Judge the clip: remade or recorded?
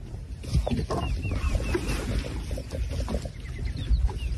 recorded